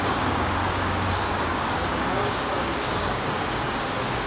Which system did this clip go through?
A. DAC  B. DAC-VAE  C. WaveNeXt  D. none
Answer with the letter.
A